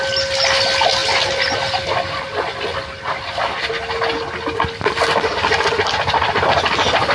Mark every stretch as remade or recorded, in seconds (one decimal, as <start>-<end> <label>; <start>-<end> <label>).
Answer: 0.0-7.1 recorded